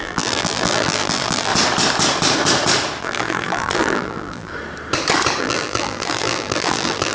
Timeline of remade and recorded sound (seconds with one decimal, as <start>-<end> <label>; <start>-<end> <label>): 0.0-1.5 remade; 1.5-3.0 recorded; 3.0-4.5 remade; 4.5-5.4 recorded; 5.4-7.1 remade